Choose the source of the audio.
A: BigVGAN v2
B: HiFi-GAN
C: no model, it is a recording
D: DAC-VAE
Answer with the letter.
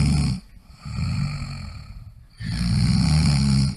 C